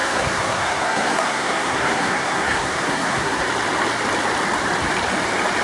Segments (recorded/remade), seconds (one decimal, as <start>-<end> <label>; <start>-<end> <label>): 0.0-3.4 remade; 3.4-5.6 recorded